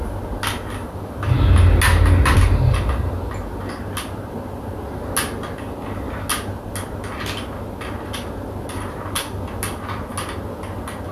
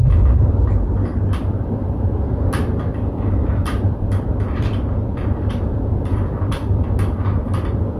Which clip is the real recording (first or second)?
first